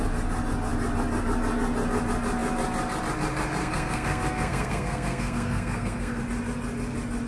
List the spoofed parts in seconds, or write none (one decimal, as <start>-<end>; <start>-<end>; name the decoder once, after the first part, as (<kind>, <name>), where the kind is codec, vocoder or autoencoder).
3.6-6.2 (codec, SNAC)